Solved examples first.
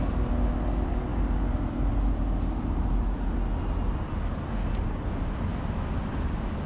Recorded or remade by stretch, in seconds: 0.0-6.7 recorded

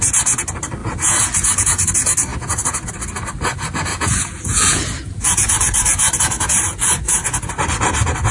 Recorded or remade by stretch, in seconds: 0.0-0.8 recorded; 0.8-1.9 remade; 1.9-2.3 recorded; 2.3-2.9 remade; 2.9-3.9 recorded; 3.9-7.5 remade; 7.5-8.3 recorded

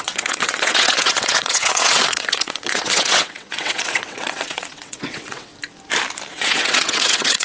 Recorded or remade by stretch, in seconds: 0.0-5.5 remade; 5.5-6.3 recorded; 6.3-7.4 remade